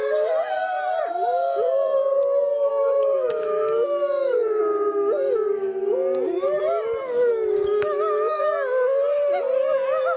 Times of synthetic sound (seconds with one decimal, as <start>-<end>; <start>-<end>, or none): 2.7-4.6; 7.3-8.4